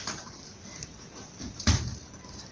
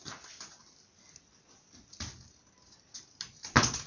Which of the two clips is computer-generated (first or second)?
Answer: first